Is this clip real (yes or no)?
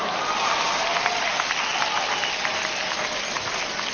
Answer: yes